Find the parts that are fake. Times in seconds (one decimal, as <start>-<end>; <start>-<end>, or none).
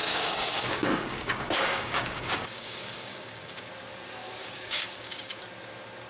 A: 0.0-3.7; 4.4-5.4